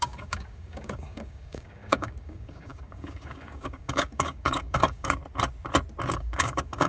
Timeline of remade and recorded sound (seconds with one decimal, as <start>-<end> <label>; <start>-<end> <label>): 0.0-5.2 remade; 5.2-6.1 recorded; 6.1-6.9 remade